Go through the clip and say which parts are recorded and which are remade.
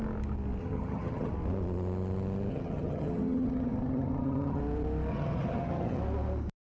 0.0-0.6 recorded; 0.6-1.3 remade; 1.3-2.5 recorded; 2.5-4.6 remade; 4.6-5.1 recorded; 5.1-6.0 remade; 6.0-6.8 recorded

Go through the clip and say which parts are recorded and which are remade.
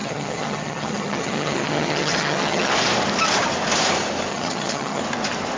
0.0-2.7 remade; 2.7-4.3 recorded; 4.3-5.0 remade; 5.0-5.6 recorded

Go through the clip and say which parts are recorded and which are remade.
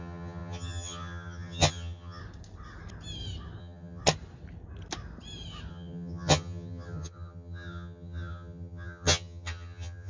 0.0-2.2 remade; 2.2-3.6 recorded; 3.6-4.0 remade; 4.0-5.7 recorded; 5.7-10.1 remade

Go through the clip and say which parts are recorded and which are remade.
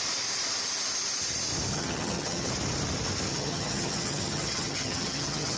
0.0-1.7 recorded; 1.7-2.5 remade; 2.5-3.3 recorded; 3.3-5.6 remade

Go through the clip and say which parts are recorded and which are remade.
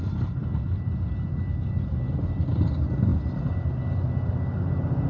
0.0-5.1 recorded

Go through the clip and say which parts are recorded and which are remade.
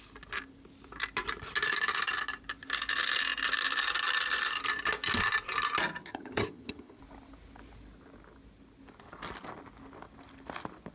0.0-6.0 recorded; 6.0-7.0 remade; 7.0-10.9 recorded